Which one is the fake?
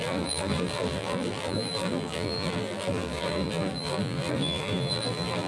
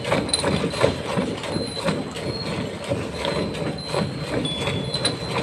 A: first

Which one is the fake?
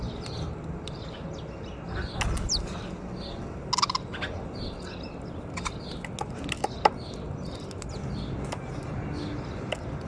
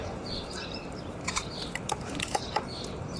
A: second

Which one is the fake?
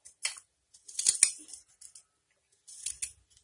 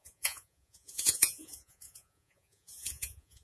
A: second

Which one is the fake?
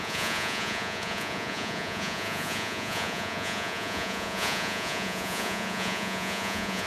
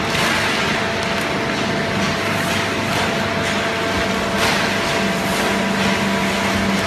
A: first